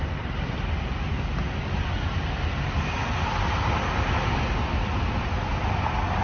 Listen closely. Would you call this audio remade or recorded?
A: recorded